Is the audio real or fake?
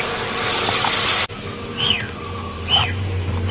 real